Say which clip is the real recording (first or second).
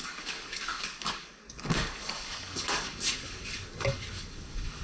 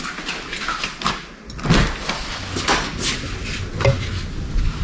second